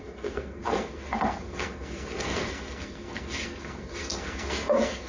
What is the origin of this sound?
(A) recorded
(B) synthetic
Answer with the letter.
B